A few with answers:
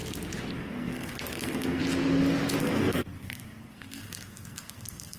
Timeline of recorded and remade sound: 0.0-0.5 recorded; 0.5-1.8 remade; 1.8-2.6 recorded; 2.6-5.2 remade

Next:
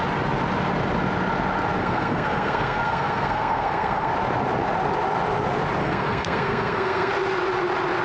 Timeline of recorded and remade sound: 0.0-1.8 recorded; 1.8-4.1 remade; 4.1-5.8 recorded; 5.8-7.1 remade; 7.1-8.0 recorded

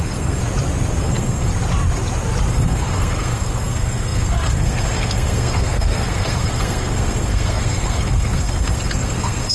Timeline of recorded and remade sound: 0.0-0.4 remade; 0.4-1.0 recorded; 1.0-1.5 remade; 1.5-2.5 recorded; 2.5-9.5 remade